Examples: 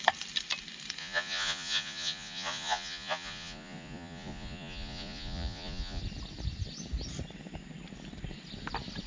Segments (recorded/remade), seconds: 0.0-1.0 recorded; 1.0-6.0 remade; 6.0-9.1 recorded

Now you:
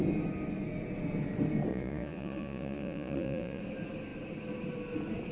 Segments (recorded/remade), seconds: 0.0-1.7 recorded; 1.7-3.6 remade; 3.6-5.3 recorded

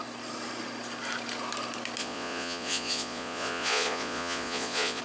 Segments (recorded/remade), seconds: 0.0-2.0 recorded; 2.0-5.0 remade

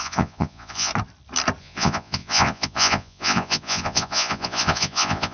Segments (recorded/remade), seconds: 0.0-0.9 remade; 0.9-1.6 recorded; 1.6-5.3 remade

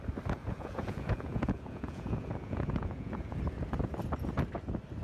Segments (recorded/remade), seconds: 0.0-0.4 recorded; 0.4-3.4 remade; 3.4-5.0 recorded